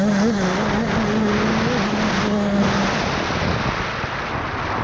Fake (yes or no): no